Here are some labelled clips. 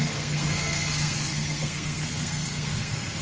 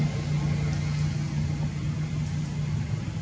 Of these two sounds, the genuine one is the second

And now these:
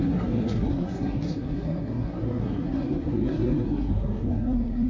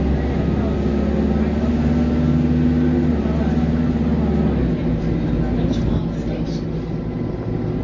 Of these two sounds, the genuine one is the second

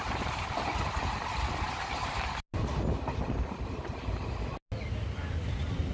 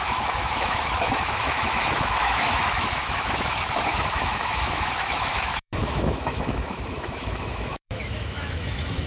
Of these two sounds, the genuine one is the first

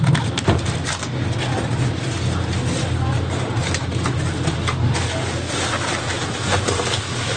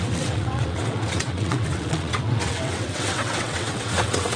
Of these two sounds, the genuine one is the first